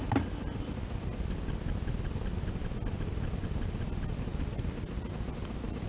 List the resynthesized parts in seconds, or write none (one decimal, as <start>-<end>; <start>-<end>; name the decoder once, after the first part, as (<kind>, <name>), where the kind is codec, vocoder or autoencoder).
none